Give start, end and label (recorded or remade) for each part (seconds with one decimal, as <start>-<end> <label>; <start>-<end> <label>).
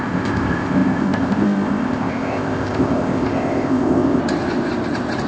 0.0-4.2 remade; 4.2-5.3 recorded